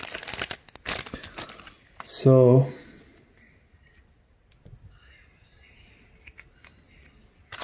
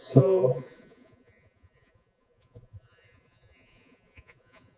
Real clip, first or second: first